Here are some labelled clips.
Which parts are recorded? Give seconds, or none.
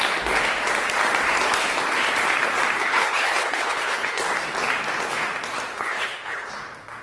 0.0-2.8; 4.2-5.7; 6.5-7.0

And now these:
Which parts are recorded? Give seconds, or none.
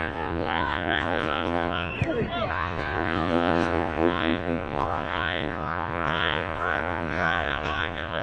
1.9-2.5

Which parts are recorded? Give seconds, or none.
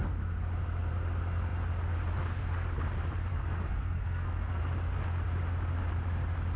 0.0-3.3; 4.6-6.6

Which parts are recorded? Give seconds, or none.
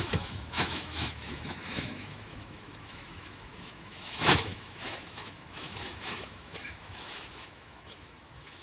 none